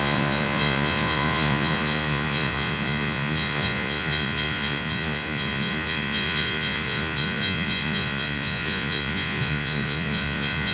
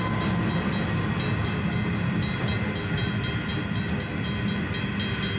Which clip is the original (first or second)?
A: second